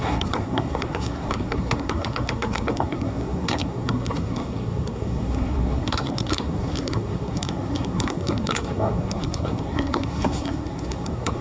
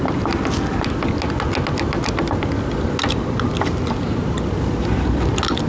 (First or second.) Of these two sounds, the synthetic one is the first